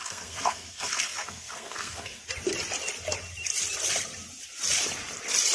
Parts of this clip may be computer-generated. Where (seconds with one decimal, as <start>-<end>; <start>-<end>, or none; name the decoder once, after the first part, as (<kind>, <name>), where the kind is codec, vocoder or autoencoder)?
0.0-2.2 (codec, SNAC)